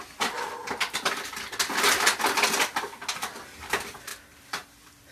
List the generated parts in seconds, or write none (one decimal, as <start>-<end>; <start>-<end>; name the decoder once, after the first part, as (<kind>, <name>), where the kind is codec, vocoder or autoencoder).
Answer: 4.1-5.1 (vocoder, BigVGAN v2)